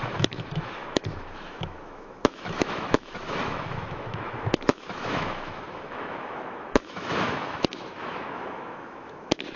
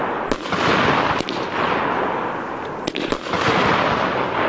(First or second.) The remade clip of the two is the first